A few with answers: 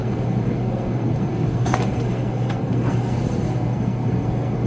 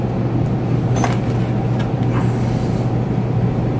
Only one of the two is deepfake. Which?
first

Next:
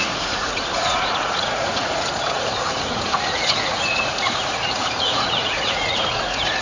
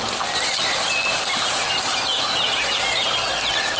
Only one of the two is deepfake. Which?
first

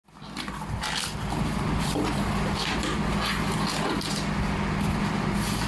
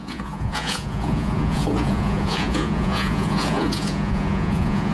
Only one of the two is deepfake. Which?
second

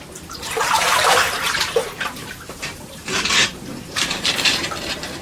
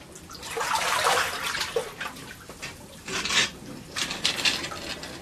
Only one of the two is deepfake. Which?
first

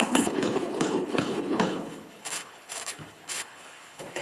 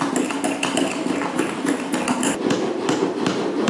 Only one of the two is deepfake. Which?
first